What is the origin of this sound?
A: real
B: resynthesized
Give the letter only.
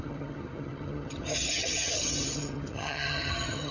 B